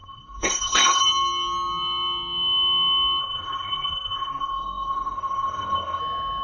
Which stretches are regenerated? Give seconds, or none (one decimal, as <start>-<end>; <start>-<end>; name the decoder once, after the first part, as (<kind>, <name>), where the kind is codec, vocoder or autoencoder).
0.0-1.0 (codec, SNAC); 3.2-6.0